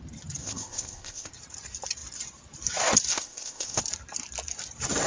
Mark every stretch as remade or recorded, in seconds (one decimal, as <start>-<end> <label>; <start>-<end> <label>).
0.0-0.4 recorded; 0.4-1.3 remade; 1.3-3.1 recorded; 3.1-3.8 remade; 3.8-5.1 recorded